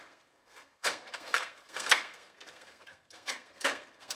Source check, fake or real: fake